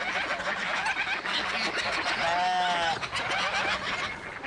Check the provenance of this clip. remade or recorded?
recorded